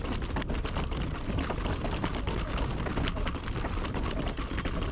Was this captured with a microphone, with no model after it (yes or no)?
yes